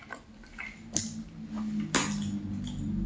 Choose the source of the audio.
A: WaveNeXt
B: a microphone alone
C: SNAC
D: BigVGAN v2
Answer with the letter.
B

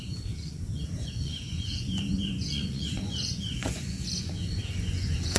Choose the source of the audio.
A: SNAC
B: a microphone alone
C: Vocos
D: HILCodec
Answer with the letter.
C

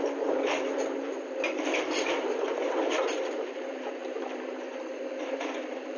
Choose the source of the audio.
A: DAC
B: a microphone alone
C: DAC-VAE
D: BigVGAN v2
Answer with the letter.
D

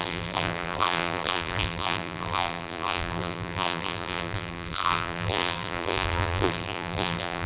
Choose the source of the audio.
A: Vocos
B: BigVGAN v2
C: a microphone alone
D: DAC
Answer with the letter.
B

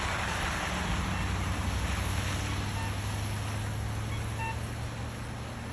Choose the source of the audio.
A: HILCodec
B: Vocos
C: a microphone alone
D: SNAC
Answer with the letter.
C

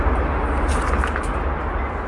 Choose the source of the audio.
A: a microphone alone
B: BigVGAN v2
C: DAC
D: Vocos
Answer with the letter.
A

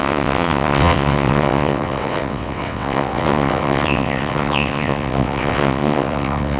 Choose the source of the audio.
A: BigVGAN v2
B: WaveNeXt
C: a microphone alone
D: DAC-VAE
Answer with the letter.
B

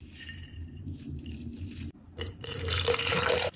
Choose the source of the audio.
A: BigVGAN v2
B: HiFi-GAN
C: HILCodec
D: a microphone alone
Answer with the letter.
A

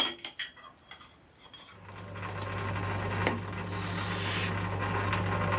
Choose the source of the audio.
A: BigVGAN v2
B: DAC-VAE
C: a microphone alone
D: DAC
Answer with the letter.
C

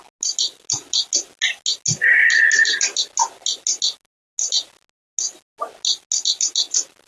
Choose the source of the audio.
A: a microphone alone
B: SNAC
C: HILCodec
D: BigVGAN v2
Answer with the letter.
A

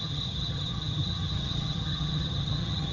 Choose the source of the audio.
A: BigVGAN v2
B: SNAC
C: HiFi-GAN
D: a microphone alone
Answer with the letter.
C